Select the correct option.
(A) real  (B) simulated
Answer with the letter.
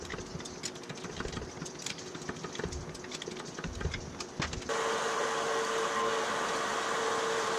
A